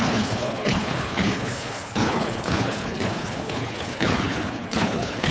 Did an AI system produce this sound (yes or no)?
yes